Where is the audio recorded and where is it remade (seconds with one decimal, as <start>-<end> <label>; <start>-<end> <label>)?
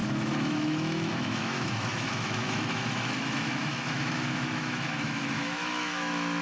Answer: 0.0-6.4 remade